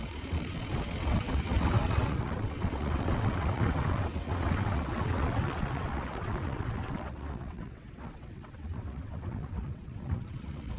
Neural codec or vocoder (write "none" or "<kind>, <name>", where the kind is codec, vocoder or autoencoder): vocoder, WaveNeXt